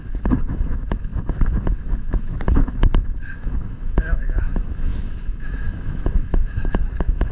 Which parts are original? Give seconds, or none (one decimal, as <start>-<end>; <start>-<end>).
1.1-1.6